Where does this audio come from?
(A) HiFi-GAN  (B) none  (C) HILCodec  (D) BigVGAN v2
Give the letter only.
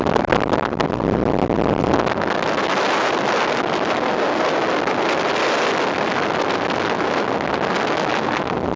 B